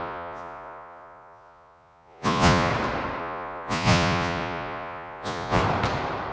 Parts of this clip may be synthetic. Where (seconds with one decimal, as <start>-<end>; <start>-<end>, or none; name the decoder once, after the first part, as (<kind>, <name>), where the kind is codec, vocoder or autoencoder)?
0.0-2.7 (vocoder, Vocos); 3.2-5.6